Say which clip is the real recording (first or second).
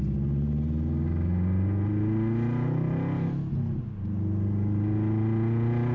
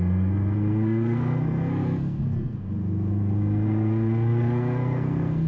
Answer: first